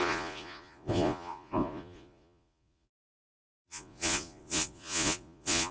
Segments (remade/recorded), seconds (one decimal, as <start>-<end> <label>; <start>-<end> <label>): 0.0-5.7 remade